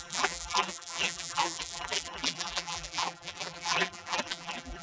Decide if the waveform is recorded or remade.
remade